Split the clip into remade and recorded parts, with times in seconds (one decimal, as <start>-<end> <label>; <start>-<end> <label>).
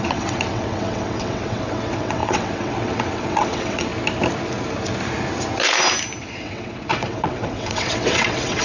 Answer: 0.0-3.9 remade; 3.9-6.2 recorded; 6.2-8.6 remade